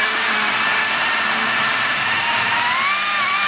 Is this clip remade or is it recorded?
recorded